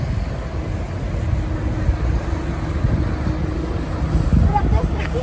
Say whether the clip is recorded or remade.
recorded